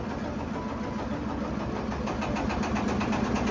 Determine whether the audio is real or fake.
real